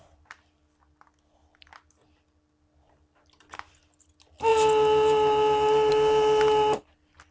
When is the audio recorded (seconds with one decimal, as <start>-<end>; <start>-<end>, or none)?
0.0-7.3